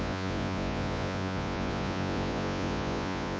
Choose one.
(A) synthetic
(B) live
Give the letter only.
A